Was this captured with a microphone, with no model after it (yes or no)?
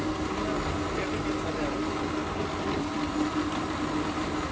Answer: yes